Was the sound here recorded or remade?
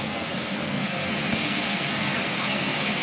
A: remade